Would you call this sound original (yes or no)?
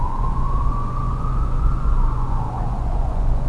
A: no